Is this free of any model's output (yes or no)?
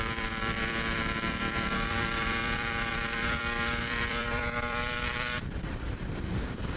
no